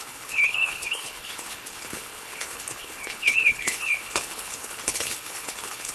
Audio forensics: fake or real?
fake